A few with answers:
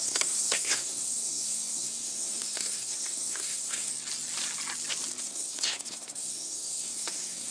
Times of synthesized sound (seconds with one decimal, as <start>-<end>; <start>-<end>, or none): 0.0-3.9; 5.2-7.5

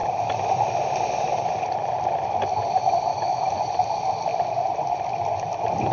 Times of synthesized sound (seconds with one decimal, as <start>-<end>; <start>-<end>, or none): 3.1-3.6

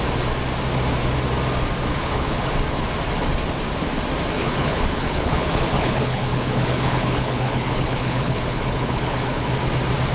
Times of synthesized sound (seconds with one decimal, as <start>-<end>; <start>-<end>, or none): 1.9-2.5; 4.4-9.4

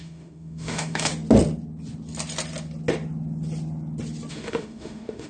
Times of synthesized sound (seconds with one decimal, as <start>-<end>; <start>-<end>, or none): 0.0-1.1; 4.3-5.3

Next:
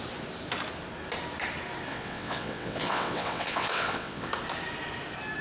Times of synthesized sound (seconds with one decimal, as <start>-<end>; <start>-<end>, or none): 1.9-4.3

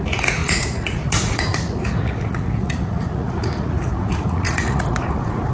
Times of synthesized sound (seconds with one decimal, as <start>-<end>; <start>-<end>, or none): 0.0-5.5